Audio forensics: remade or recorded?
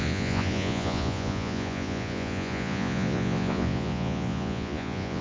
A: remade